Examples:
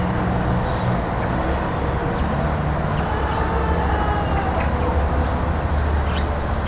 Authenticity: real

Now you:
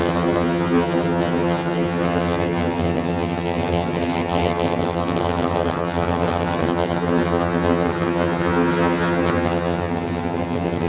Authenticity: fake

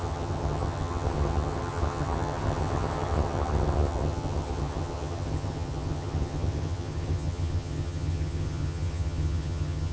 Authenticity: fake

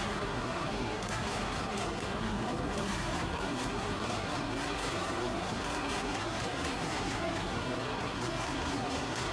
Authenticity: fake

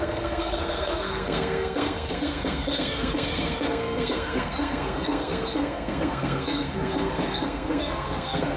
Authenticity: fake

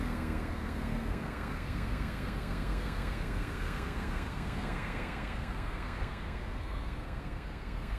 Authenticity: fake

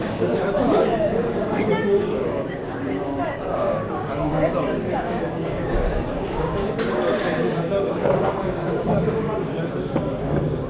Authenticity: fake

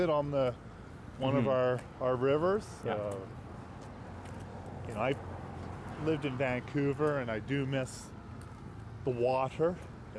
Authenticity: real